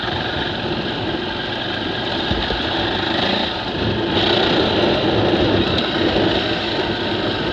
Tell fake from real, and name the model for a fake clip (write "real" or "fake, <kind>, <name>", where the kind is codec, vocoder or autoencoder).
real